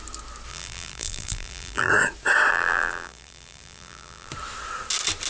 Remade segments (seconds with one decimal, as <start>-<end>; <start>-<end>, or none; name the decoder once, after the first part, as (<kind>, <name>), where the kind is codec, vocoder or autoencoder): 0.5-1.9 (vocoder, BigVGAN v2); 2.5-4.3